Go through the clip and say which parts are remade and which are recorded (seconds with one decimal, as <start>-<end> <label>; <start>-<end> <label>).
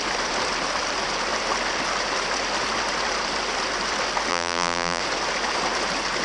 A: 0.0-4.3 recorded; 4.3-5.0 remade; 5.0-6.2 recorded